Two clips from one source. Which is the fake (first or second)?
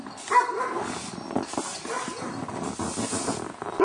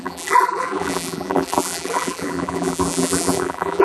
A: second